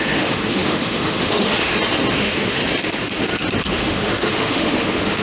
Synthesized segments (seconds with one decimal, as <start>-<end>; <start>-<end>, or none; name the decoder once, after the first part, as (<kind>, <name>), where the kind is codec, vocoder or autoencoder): 0.0-1.7 (autoencoder, DAC-VAE); 2.2-2.6; 3.6-5.2